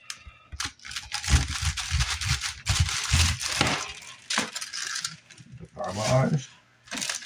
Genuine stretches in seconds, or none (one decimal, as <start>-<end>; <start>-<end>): 0.0-7.3